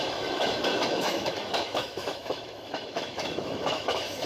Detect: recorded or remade remade